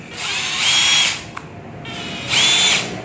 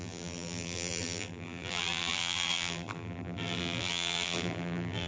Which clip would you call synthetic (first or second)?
second